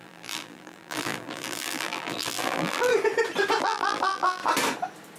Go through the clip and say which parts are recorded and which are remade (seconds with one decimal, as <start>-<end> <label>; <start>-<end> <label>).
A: 0.0-2.9 remade; 2.9-3.6 recorded; 3.6-4.4 remade; 4.4-5.2 recorded